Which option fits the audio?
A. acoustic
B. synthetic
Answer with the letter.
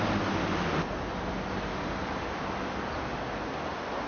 A